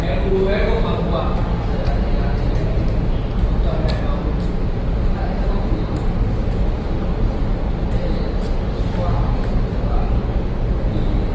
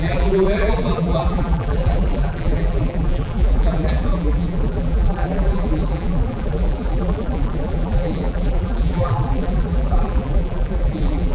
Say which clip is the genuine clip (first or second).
first